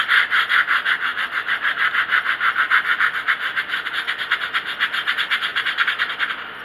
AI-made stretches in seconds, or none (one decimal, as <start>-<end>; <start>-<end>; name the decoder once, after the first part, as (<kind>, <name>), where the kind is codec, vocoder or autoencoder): 5.5-6.1 (vocoder, BigVGAN v2)